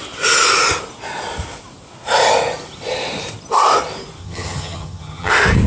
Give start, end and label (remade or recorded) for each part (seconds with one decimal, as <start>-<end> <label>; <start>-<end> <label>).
0.0-4.2 recorded; 4.2-5.3 remade; 5.3-5.7 recorded